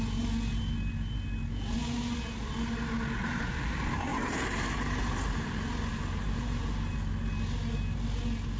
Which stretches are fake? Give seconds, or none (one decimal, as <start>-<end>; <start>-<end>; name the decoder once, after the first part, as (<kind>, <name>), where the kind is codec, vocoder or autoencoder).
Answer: 4.1-5.5 (vocoder, BigVGAN v2); 5.9-6.9